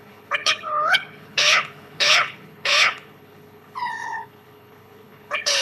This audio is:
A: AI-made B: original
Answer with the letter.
A